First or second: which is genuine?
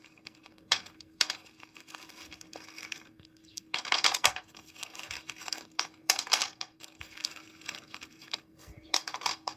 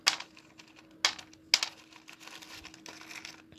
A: second